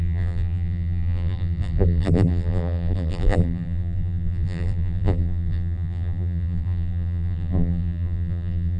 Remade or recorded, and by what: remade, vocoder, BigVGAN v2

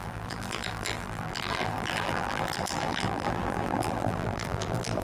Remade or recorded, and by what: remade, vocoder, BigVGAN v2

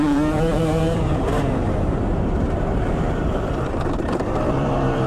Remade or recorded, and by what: remade, vocoder, BigVGAN v2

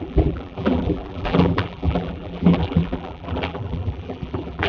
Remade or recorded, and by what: remade, vocoder, BigVGAN v2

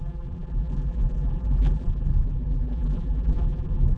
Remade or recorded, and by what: remade, vocoder, BigVGAN v2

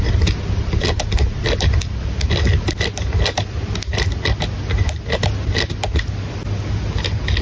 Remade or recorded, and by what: recorded